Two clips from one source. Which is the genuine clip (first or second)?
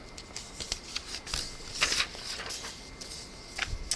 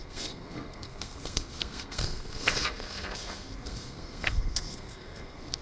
first